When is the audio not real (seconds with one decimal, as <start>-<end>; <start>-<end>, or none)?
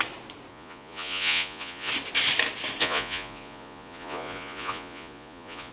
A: 0.5-1.9; 2.8-5.7